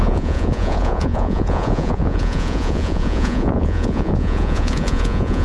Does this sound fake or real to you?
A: fake